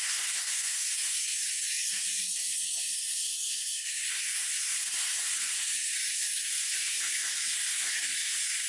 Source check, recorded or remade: remade